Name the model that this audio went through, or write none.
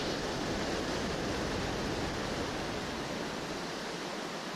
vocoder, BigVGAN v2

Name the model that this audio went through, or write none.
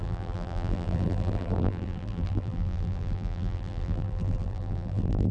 vocoder, BigVGAN v2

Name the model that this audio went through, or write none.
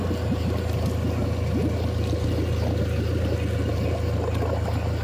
none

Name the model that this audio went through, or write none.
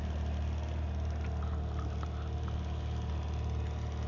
none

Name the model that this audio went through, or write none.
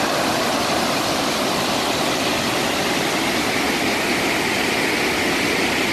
none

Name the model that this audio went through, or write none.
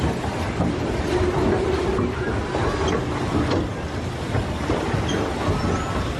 none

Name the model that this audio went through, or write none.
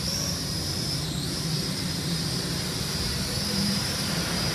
vocoder, BigVGAN v2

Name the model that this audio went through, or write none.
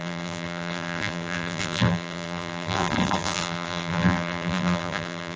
vocoder, BigVGAN v2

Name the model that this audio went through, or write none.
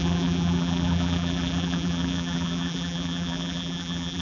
vocoder, BigVGAN v2